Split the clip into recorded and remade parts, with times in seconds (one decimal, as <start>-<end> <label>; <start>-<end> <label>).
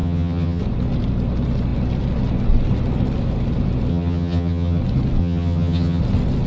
0.0-0.6 remade; 0.6-3.9 recorded; 3.9-4.8 remade; 4.8-5.2 recorded; 5.2-6.0 remade; 6.0-6.5 recorded